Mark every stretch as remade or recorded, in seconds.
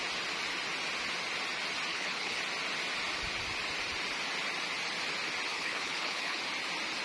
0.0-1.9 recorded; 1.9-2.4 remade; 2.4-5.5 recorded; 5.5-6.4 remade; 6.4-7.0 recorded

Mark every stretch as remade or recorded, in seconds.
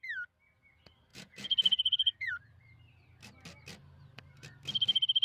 0.0-1.1 recorded; 1.1-2.3 remade; 2.3-5.2 recorded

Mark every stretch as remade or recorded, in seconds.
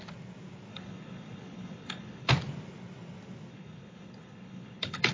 0.0-0.7 recorded; 0.7-2.3 remade; 2.3-3.5 recorded; 3.5-5.1 remade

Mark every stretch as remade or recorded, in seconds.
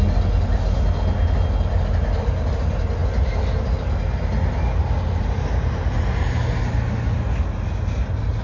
0.0-8.4 recorded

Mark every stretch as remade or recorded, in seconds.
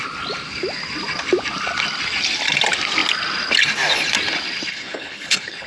0.0-4.7 recorded; 4.7-5.7 remade